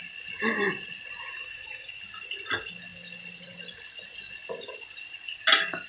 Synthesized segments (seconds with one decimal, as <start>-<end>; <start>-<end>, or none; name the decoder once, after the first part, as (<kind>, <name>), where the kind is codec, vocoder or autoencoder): 1.3-2.0 (autoencoder, DAC-VAE)